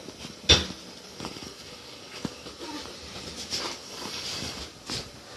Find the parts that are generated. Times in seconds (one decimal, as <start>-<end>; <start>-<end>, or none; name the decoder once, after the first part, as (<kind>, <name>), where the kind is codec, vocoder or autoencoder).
1.1-2.5 (codec, DAC); 3.8-4.6